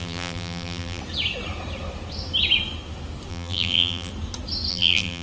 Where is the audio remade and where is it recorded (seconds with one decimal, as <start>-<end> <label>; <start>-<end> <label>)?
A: 0.0-1.0 remade; 1.0-3.3 recorded; 3.3-4.1 remade; 4.1-4.7 recorded; 4.7-5.2 remade

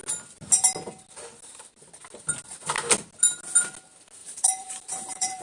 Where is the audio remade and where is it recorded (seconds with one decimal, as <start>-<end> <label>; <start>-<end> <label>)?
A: 0.0-4.2 recorded; 4.2-5.4 remade